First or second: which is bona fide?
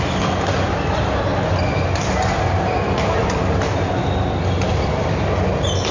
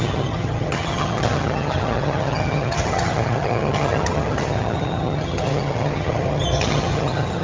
first